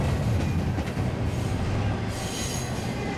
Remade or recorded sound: recorded